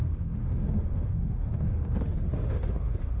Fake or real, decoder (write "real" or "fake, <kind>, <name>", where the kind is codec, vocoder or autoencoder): fake, autoencoder, DAC-VAE